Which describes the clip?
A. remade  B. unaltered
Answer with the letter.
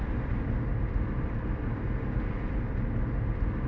B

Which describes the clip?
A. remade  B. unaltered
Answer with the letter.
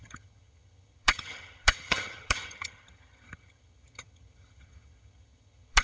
A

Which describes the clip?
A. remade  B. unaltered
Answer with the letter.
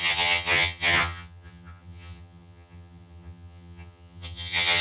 A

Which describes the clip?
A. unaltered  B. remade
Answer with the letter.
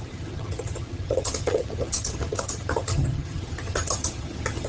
B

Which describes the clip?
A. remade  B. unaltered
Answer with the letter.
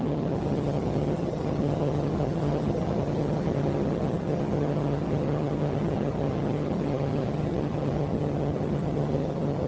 A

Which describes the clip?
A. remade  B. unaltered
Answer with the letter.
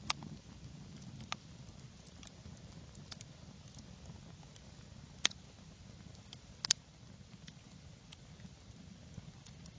B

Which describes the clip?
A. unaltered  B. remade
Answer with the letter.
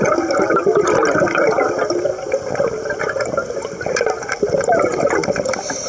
A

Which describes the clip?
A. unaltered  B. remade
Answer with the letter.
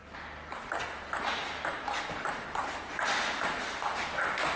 A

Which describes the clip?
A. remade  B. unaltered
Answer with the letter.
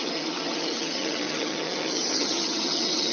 A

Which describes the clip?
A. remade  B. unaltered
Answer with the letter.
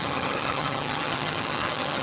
A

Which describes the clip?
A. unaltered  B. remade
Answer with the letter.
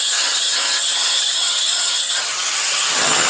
B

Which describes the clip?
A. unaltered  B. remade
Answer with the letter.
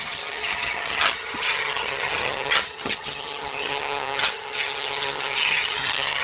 B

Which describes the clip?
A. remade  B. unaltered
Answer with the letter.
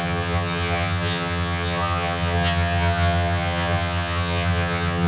A